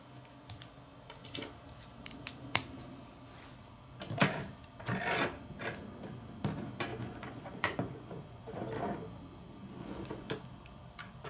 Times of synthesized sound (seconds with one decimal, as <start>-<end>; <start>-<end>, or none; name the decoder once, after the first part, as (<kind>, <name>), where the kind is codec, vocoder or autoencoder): 6.9-8.7 (vocoder, Vocos); 9.8-10.3

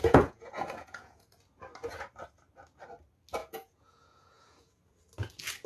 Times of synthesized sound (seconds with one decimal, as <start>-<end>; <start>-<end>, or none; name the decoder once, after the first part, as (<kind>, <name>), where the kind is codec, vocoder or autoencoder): 0.0-1.3 (vocoder, Vocos); 3.4-4.8

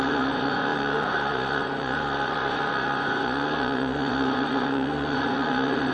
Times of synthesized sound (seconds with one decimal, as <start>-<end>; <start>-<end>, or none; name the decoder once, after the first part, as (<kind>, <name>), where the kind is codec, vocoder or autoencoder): 0.0-5.9 (vocoder, Vocos)

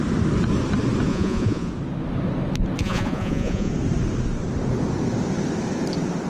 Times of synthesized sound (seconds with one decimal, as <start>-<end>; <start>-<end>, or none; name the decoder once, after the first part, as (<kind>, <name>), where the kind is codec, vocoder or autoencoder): 1.1-1.7 (vocoder, Vocos); 2.8-3.7

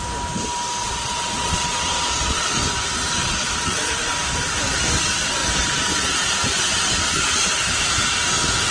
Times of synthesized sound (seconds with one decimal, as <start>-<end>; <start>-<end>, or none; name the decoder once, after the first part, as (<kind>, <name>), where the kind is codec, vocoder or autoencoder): 0.8-2.6 (vocoder, Vocos); 3.2-3.9

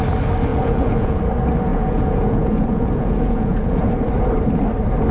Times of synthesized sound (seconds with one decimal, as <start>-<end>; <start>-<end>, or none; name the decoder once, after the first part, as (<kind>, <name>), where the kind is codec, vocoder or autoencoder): 0.5-1.2 (vocoder, Vocos); 1.7-3.9

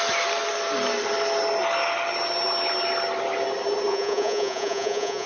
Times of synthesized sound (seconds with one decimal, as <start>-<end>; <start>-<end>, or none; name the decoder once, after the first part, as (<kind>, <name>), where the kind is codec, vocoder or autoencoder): 3.9-5.3 (vocoder, Vocos)

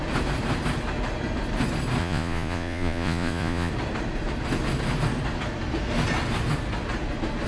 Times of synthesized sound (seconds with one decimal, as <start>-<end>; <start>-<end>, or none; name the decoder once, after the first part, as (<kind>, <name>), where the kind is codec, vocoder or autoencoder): 2.0-3.7 (vocoder, Vocos)